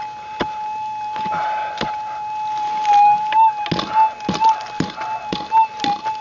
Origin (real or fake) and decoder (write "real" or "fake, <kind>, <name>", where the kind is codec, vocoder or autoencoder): real